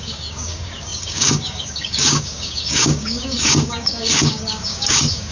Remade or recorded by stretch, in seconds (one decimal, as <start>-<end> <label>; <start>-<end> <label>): 0.0-5.3 remade